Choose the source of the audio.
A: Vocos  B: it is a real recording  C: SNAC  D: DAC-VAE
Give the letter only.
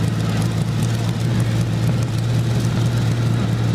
B